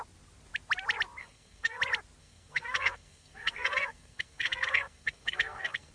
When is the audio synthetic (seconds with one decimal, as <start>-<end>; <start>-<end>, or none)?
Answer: 1.2-1.8; 2.2-5.9

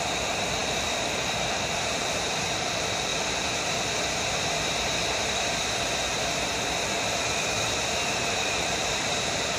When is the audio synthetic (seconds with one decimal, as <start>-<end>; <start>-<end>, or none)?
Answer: 0.0-3.1; 7.1-9.6